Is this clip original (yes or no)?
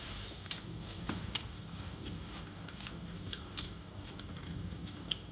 no